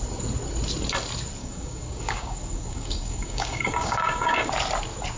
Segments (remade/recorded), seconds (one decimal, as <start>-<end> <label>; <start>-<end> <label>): 0.0-1.4 recorded; 1.4-4.5 remade; 4.5-5.2 recorded